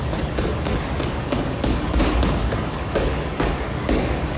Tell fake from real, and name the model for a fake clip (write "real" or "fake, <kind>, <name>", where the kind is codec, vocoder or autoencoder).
fake, codec, DAC